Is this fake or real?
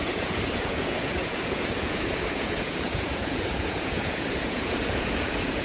fake